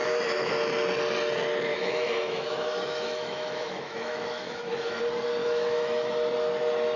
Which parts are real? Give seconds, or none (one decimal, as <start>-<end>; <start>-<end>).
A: 0.5-1.7; 5.0-5.4; 6.1-7.0